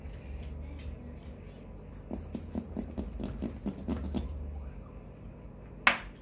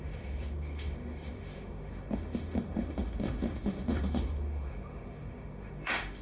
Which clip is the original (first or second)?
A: first